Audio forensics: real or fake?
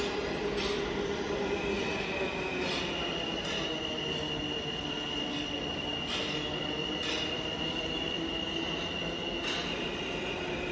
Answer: real